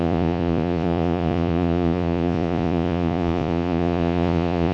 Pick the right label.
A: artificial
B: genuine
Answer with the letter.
A